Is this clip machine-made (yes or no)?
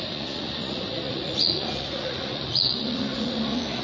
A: yes